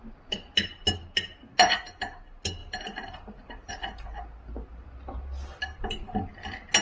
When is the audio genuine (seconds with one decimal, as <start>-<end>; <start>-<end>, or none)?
0.0-2.6; 3.7-5.6; 6.2-6.8